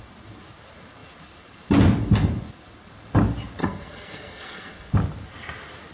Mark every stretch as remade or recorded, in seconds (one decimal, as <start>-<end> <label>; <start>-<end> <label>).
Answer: 0.0-3.6 recorded; 3.6-4.9 remade; 4.9-5.9 recorded